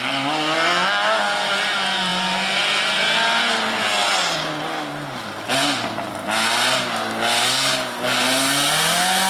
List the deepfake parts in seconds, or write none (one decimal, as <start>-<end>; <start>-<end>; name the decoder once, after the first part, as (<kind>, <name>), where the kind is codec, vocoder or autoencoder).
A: none